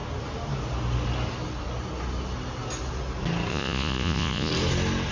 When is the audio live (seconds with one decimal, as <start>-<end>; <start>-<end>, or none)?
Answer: 0.0-3.5; 4.5-5.1